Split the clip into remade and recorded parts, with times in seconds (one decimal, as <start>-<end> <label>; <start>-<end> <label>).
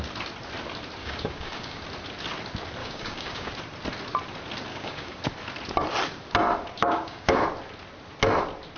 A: 0.0-1.0 recorded; 1.0-1.8 remade; 1.8-2.8 recorded; 2.8-3.5 remade; 3.5-4.7 recorded; 4.7-5.2 remade; 5.2-6.8 recorded; 6.8-7.4 remade; 7.4-8.8 recorded